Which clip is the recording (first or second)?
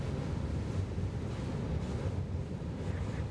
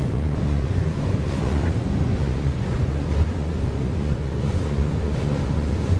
first